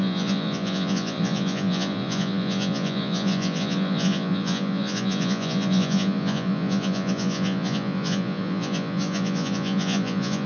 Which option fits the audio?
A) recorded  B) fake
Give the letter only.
B